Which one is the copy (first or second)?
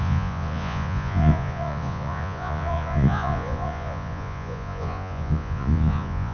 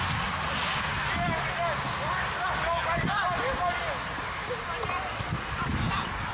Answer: first